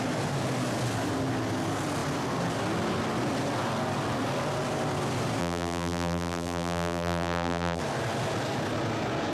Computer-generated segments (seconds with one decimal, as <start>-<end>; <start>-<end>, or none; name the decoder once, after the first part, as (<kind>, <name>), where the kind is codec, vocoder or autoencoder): 5.4-7.8 (vocoder, BigVGAN v2)